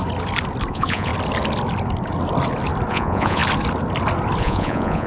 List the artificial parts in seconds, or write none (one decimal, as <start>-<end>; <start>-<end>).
0.7-1.1; 2.9-3.4; 4.4-5.1